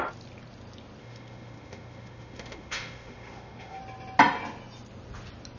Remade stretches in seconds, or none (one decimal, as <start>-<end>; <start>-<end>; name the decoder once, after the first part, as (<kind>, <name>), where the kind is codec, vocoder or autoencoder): 1.0-3.8 (autoencoder, DAC-VAE)